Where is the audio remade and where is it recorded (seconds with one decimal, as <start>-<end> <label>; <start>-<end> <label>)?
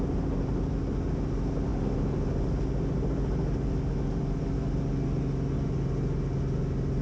0.0-7.0 recorded